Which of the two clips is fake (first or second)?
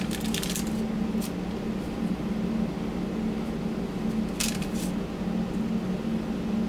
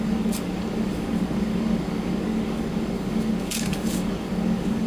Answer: second